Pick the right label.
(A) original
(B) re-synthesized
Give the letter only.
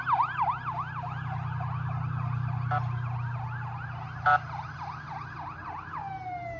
A